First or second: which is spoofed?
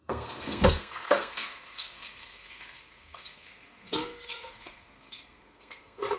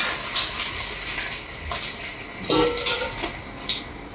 first